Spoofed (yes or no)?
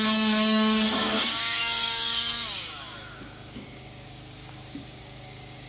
yes